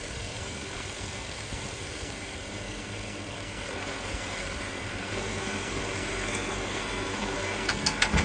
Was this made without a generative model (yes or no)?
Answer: no